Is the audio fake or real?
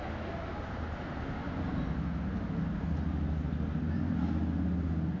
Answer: real